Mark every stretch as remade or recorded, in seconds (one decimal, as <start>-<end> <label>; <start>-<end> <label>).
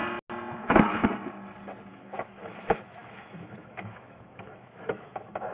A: 0.0-0.6 recorded; 0.6-1.0 remade; 1.0-1.9 recorded; 1.9-5.5 remade